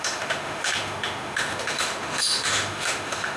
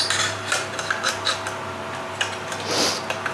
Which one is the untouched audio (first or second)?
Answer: second